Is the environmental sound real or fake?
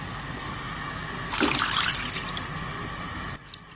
real